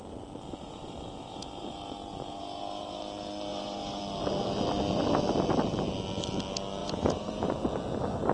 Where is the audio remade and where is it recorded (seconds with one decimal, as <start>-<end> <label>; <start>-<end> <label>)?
0.0-0.6 recorded; 0.6-3.0 remade; 3.0-3.5 recorded; 3.5-4.0 remade; 4.0-6.8 recorded; 6.8-7.5 remade; 7.5-8.3 recorded